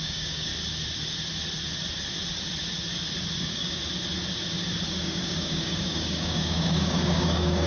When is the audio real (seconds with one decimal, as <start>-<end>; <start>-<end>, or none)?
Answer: 0.5-3.4; 3.8-4.9